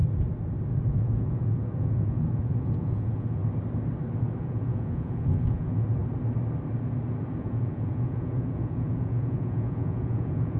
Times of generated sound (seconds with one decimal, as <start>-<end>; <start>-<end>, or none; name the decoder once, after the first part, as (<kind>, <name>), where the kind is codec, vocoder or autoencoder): 0.9-3.4 (vocoder, Vocos); 4.4-6.0; 7.4-10.6